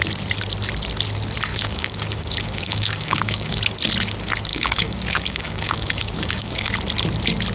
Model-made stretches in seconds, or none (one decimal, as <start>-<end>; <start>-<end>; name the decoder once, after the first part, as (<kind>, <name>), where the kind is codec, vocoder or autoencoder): 1.5-3.6 (codec, DAC); 4.5-6.7